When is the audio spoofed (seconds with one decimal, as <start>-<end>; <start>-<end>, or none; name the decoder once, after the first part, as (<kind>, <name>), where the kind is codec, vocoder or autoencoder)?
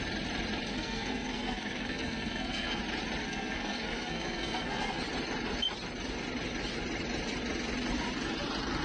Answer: 0.7-2.8 (codec, SNAC); 3.2-5.0